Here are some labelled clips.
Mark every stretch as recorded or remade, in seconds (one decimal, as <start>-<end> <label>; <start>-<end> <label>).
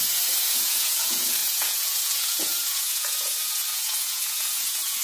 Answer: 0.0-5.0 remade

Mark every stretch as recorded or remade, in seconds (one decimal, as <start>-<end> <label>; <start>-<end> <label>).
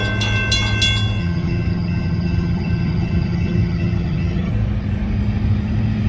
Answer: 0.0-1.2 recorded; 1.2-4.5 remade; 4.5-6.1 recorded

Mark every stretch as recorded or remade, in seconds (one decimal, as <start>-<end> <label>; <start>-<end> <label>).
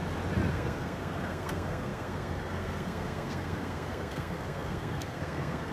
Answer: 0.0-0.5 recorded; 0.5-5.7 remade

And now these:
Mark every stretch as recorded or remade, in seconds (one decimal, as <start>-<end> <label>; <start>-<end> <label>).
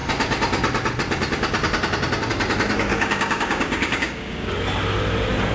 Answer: 0.0-2.9 recorded; 2.9-4.5 remade; 4.5-5.5 recorded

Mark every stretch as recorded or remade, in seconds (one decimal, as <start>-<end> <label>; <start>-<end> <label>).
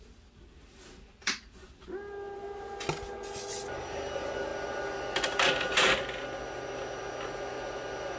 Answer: 0.0-8.2 recorded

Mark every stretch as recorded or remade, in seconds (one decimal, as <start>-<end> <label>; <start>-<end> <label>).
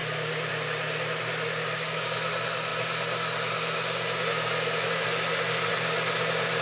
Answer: 0.0-6.6 recorded